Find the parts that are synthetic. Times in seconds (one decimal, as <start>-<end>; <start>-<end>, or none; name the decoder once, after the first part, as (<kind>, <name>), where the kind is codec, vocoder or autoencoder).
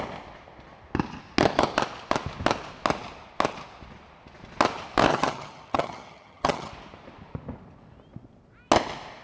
5.1-6.7 (vocoder, HiFi-GAN)